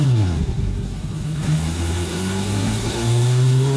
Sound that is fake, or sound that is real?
fake